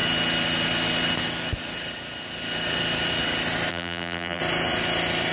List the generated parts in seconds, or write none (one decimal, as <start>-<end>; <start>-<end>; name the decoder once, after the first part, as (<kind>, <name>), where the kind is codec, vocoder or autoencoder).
3.7-4.4 (vocoder, BigVGAN v2)